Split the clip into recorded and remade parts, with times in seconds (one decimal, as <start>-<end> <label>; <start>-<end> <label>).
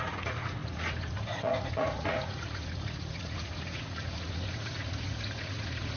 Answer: 0.0-6.0 remade